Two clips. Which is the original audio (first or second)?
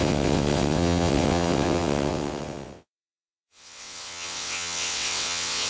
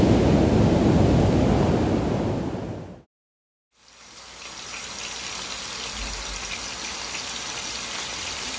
second